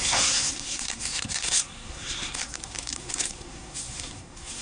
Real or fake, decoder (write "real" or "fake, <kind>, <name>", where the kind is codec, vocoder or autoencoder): fake, codec, SNAC